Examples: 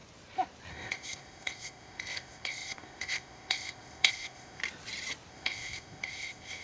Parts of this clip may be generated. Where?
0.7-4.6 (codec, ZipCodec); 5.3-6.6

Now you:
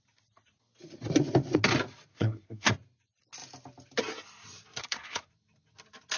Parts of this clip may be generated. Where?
2.1-2.7 (codec, SNAC); 4.8-5.3

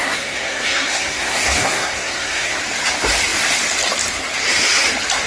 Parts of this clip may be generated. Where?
0.0-2.6 (codec, SNAC)

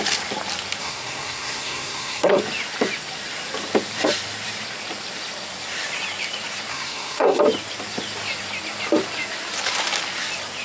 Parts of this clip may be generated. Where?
0.8-2.4 (codec, SNAC); 6.7-7.4

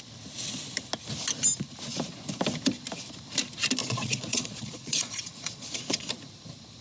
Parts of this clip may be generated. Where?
3.8-6.1 (vocoder, Vocos)

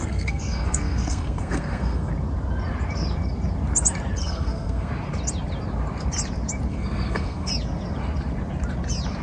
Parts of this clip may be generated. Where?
0.0-2.1 (codec, SNAC); 4.2-4.9; 6.7-7.5

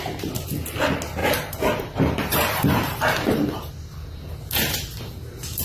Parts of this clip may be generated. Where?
1.2-3.7 (vocoder, BigVGAN v2)

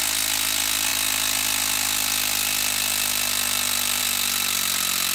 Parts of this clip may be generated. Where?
none